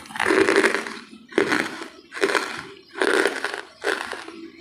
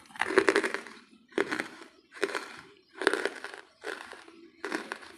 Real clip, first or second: first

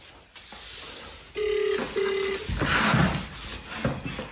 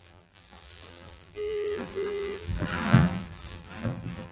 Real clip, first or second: first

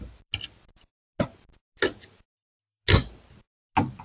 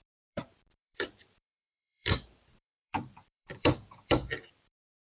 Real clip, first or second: first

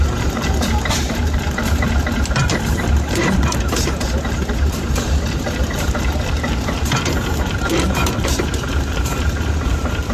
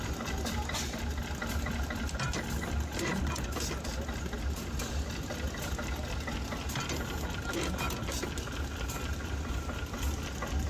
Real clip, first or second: second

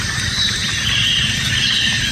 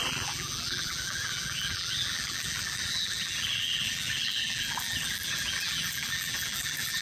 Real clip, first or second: first